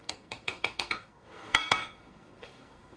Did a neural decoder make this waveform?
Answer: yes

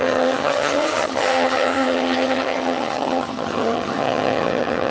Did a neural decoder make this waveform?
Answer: yes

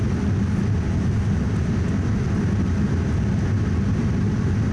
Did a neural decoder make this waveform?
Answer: no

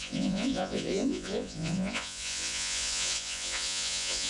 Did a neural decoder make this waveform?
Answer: yes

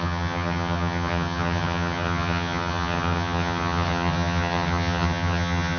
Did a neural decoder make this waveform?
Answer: yes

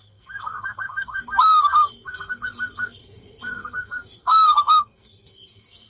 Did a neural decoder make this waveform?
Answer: yes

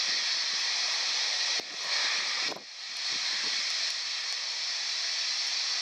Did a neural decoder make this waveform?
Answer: no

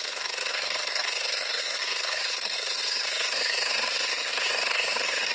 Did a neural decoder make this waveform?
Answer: yes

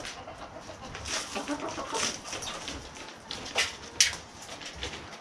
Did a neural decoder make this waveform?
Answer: no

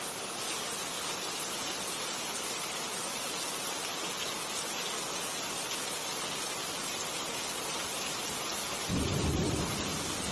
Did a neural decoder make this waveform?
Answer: no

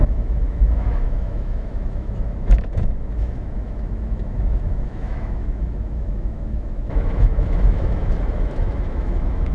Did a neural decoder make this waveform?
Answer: yes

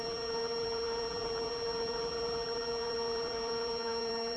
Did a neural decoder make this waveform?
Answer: yes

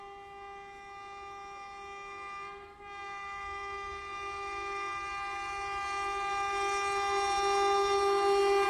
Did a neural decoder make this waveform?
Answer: no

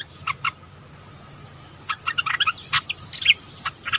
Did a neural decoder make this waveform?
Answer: no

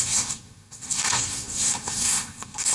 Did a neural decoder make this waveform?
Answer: yes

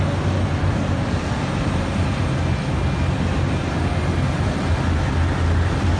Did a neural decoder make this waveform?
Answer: no